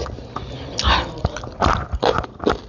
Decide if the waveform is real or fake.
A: real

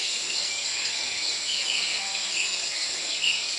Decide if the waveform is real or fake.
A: fake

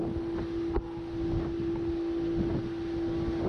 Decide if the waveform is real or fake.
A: real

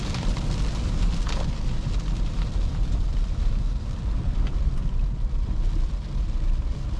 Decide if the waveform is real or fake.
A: fake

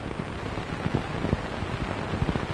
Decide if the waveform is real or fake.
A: real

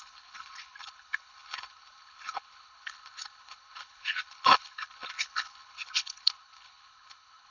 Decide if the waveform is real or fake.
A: fake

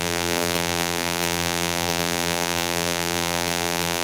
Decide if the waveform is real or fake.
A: fake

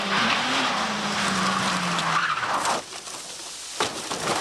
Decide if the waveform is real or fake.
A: real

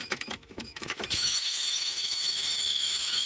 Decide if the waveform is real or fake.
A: fake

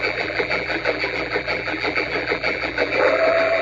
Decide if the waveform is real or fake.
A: fake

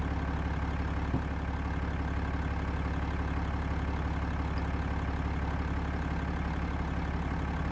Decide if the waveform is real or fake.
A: real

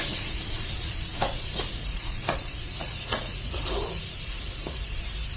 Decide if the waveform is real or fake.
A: fake